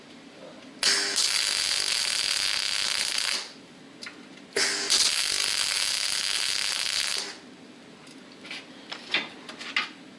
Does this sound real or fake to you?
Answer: real